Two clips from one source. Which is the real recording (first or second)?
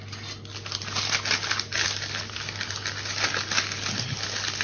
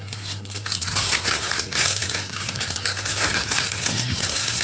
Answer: first